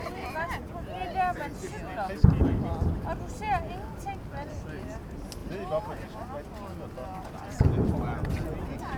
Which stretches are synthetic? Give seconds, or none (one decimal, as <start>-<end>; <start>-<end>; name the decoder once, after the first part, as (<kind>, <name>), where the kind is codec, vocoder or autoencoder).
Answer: none